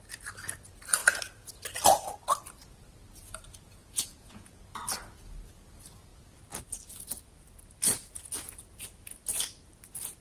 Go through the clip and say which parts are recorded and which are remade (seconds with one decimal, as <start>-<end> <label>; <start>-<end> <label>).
0.0-3.8 recorded; 3.8-4.6 remade; 4.6-10.2 recorded